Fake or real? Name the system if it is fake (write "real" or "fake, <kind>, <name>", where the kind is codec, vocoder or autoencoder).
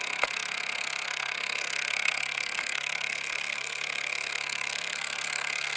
fake, codec, SNAC